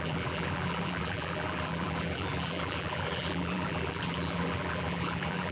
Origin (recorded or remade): remade